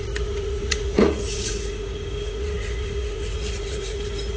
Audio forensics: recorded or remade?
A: remade